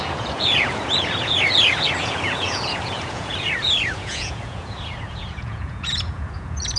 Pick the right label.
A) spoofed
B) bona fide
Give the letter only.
A